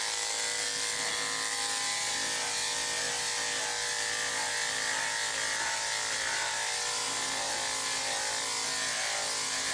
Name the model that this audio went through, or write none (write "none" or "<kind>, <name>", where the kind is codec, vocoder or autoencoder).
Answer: none